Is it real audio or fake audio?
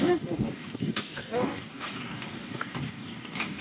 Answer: fake